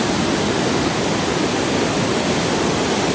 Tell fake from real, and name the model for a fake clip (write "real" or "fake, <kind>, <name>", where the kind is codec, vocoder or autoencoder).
real